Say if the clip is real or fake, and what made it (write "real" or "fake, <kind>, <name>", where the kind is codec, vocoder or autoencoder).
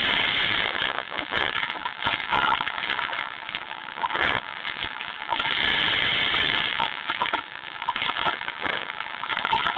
fake, vocoder, WaveNeXt